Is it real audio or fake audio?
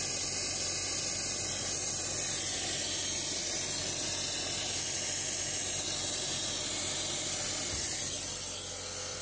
real